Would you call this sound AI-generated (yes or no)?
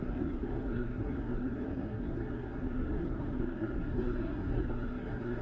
yes